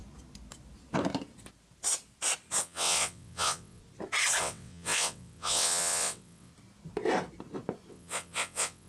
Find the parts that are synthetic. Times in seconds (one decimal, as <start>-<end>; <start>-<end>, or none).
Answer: 2.6-3.8; 4.4-6.5; 7.9-8.9

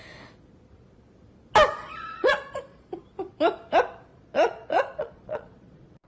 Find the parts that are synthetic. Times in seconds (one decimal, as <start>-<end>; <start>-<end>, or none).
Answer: 1.8-3.0; 4.1-6.1

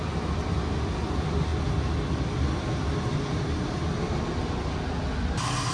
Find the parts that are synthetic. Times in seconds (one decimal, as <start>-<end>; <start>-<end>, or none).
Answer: none

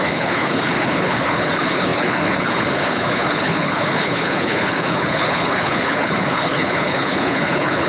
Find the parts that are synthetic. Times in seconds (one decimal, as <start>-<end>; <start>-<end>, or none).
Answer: 0.0-7.9

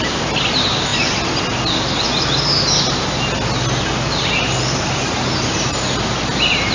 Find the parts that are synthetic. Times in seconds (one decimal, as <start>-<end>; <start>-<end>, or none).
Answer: none

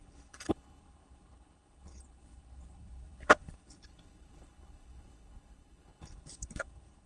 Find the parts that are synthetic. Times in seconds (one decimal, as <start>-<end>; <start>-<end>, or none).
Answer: 0.0-7.1